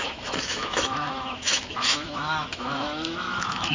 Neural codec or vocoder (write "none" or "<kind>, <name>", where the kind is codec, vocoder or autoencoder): autoencoder, DAC-VAE